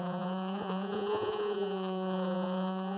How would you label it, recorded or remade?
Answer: remade